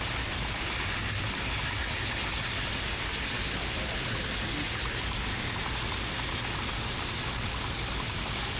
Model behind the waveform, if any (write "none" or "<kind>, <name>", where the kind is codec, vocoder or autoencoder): none